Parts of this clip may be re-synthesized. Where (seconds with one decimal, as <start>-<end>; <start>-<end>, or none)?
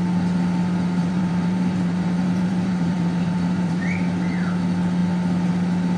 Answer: 1.0-3.8